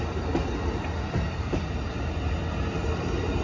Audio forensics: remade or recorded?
recorded